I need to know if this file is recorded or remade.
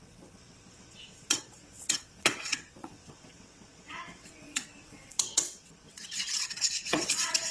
remade